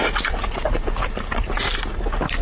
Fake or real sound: real